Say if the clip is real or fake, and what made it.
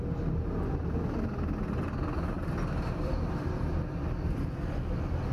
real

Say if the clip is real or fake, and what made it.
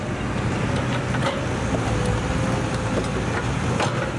real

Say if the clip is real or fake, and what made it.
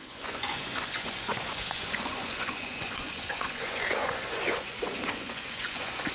fake, vocoder, Vocos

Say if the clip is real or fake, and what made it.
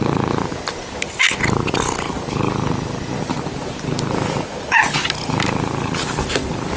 real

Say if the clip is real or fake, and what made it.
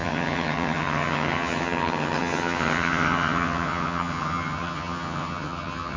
fake, vocoder, HiFi-GAN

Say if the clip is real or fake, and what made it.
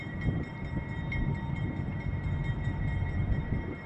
fake, vocoder, BigVGAN v2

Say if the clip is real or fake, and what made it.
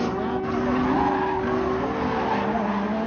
real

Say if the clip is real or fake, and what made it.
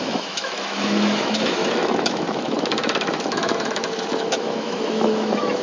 fake, autoencoder, DAC-VAE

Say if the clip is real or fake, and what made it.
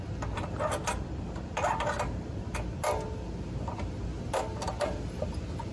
real